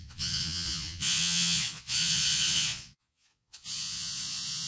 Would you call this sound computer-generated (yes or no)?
yes